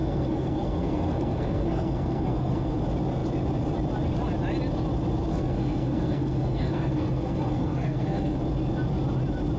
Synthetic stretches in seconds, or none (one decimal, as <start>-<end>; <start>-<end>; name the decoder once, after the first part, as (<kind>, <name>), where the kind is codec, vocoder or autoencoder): 0.0-2.8 (codec, SNAC); 5.3-8.4